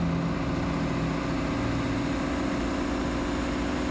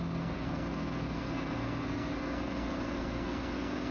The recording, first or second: first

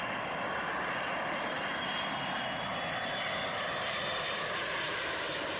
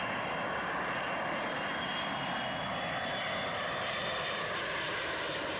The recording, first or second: second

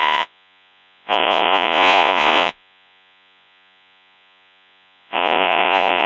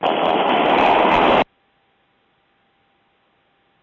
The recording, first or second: second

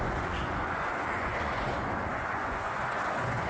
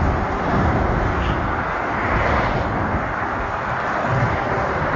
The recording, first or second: second